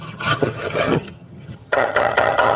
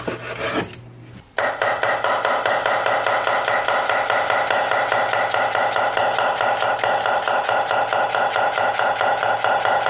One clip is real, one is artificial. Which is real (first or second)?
second